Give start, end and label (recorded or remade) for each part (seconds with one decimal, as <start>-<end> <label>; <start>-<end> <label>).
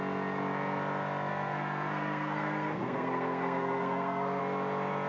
0.0-1.3 recorded; 1.3-4.4 remade; 4.4-5.1 recorded